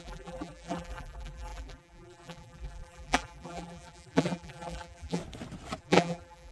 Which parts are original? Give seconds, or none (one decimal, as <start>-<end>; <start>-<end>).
5.2-5.8